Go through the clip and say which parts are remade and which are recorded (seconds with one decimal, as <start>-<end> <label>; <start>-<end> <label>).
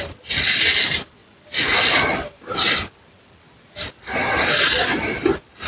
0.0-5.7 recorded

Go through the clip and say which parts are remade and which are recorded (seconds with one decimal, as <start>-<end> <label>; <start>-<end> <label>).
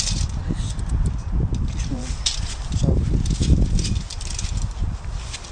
0.0-1.9 recorded; 1.9-2.8 remade; 2.8-5.5 recorded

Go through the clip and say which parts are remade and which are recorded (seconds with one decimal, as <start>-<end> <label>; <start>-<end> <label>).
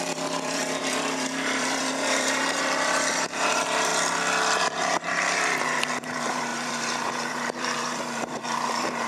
0.0-3.9 remade; 3.9-4.6 recorded; 4.6-9.1 remade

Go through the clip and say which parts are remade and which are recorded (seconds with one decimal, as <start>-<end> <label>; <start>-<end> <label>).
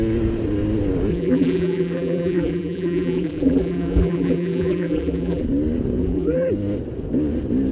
0.0-1.1 recorded; 1.1-5.4 remade; 5.4-6.0 recorded; 6.0-6.5 remade; 6.5-7.7 recorded